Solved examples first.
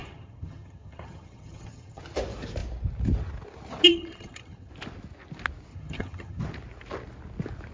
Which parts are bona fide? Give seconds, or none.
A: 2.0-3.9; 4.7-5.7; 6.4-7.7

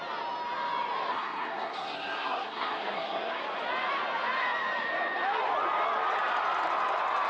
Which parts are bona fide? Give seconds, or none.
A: 0.0-1.1; 3.4-7.3